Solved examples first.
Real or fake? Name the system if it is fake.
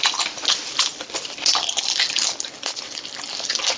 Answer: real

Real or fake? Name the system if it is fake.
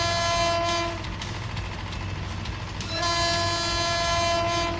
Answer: real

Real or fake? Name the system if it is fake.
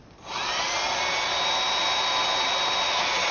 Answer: real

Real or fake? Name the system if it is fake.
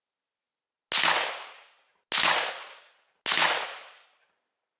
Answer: real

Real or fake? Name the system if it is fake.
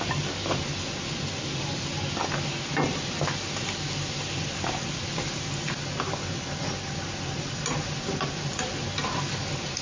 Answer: real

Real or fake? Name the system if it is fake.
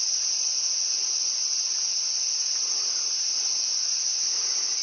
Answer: real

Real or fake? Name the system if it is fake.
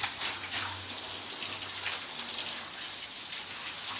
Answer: real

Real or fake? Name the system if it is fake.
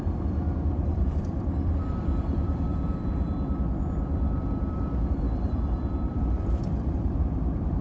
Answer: fake, vocoder, BigVGAN v2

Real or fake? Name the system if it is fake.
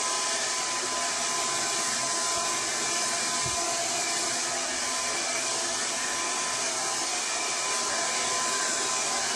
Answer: real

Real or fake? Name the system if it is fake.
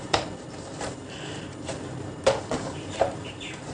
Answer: fake, vocoder, BigVGAN v2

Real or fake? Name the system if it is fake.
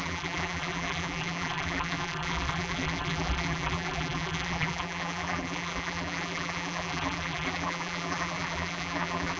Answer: fake, vocoder, BigVGAN v2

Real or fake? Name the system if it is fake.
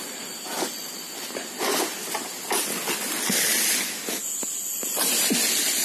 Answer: real